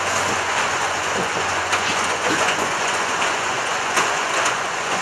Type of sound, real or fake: fake